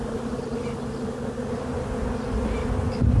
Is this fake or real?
real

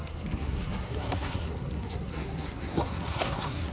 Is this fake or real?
fake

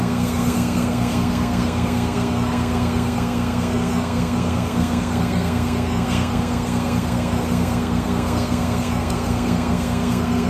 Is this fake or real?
fake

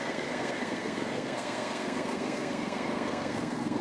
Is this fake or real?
fake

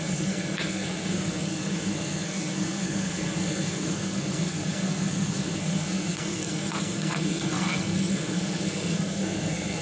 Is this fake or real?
fake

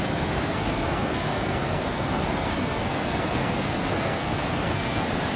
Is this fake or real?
fake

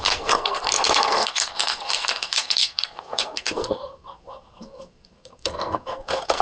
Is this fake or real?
fake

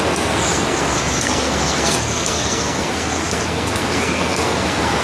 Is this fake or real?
fake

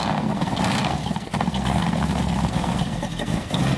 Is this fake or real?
fake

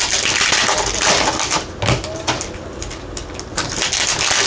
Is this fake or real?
real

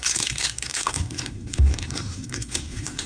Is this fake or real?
fake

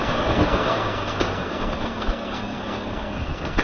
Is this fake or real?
fake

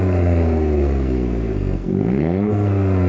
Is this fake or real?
fake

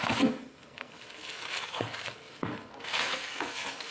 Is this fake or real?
fake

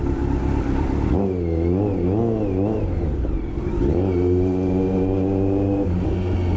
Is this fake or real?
real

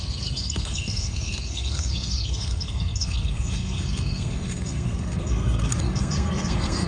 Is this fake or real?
fake